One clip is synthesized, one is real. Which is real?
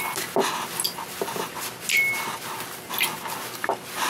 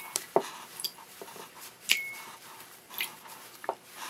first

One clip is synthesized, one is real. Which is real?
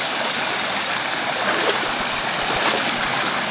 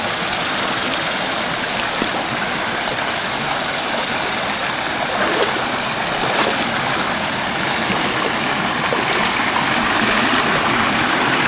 second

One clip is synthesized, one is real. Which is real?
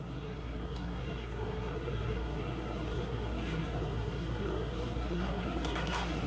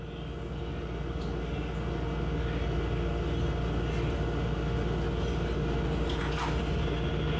second